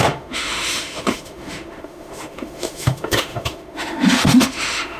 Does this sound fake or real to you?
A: fake